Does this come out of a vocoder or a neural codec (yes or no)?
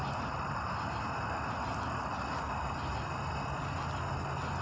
no